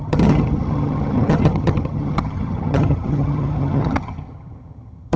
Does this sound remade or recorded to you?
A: remade